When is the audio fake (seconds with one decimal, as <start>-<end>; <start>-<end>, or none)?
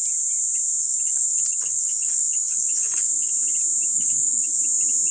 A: 0.8-3.3; 3.9-4.6